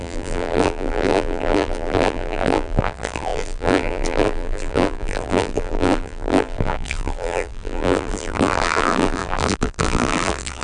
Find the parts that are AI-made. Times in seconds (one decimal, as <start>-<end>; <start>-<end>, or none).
0.0-10.6